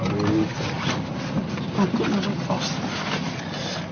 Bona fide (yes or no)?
yes